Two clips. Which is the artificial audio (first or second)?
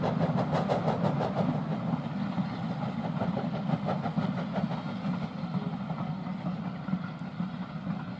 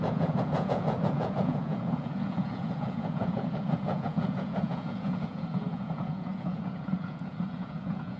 second